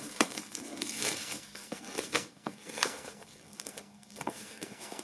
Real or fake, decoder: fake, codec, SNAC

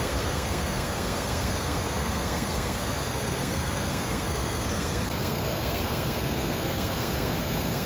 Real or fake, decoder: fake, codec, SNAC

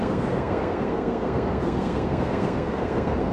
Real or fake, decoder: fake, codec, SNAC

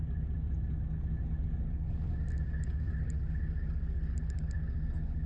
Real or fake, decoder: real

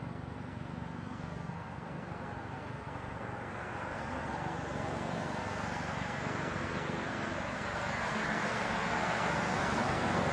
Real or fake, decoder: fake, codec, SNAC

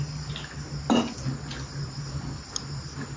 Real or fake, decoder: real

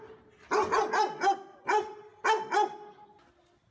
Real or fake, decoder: real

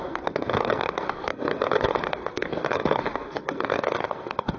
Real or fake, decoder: fake, codec, SNAC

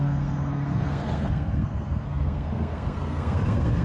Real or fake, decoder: fake, codec, SNAC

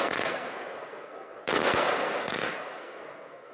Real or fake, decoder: fake, codec, SNAC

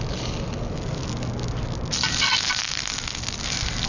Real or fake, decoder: real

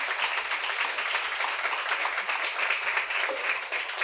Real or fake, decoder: real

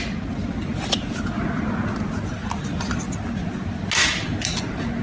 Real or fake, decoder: real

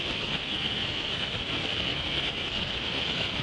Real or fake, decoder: fake, codec, SNAC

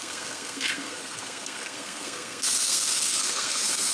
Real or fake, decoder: fake, codec, SNAC